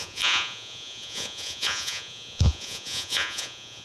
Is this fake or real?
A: fake